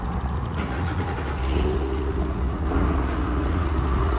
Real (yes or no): no